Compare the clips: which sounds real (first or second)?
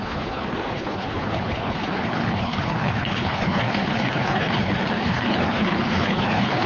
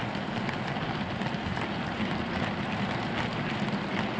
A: second